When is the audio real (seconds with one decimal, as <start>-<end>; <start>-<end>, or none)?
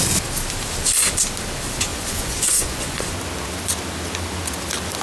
0.0-1.9; 3.1-5.0